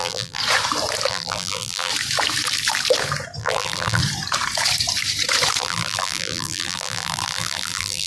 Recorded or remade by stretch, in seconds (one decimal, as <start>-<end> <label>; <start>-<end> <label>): 0.0-0.4 remade; 0.4-1.1 recorded; 1.1-1.9 remade; 1.9-3.4 recorded; 3.4-4.0 remade; 4.0-5.6 recorded; 5.6-8.1 remade